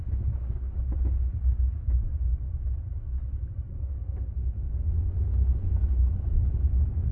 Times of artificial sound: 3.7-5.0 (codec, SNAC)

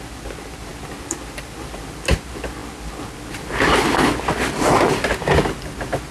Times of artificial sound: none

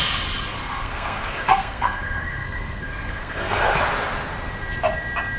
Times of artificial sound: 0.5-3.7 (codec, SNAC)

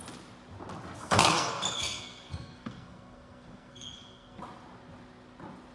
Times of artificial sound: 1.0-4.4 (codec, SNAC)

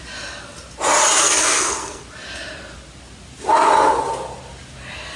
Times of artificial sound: 1.2-2.0 (codec, SNAC)